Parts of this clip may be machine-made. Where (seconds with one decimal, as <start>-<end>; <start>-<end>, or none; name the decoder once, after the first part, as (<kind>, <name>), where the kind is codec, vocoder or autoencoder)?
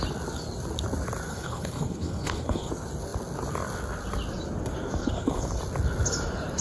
1.3-2.7 (codec, HILCodec); 5.0-5.5